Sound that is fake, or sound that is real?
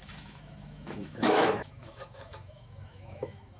fake